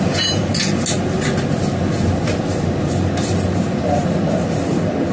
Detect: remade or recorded recorded